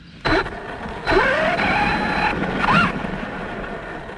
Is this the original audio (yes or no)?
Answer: yes